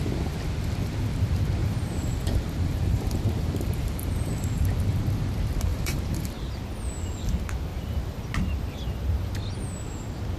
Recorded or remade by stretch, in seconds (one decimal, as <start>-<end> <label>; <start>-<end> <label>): 0.0-1.6 recorded; 1.6-4.4 remade; 4.4-5.7 recorded; 5.7-6.6 remade; 6.6-7.7 recorded; 7.7-8.2 remade; 8.2-10.4 recorded